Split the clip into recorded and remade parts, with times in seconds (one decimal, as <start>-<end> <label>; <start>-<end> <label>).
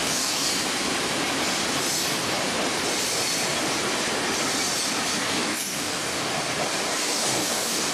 0.0-0.5 remade; 0.5-5.2 recorded; 5.2-6.3 remade; 6.3-7.0 recorded; 7.0-7.9 remade